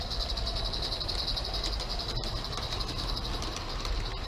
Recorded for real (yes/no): yes